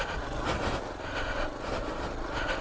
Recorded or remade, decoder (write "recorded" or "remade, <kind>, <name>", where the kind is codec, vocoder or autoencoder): recorded